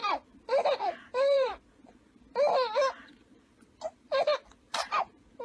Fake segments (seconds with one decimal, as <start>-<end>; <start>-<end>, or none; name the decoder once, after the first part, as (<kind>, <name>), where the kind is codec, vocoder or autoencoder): 0.0-1.6 (vocoder, BigVGAN v2); 3.3-5.0